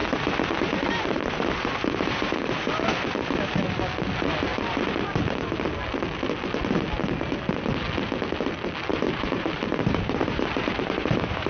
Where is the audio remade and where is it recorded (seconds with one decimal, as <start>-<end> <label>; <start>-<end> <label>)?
0.0-2.3 remade; 2.3-8.9 recorded; 8.9-11.5 remade